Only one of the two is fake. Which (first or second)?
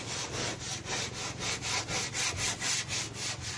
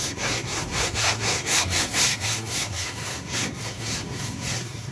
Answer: second